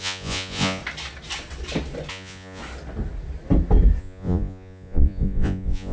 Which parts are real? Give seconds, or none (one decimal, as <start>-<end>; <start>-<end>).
0.8-2.1; 2.6-4.0